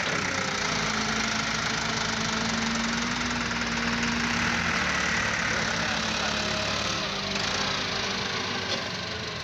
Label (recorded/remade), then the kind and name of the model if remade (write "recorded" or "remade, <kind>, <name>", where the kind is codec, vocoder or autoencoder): recorded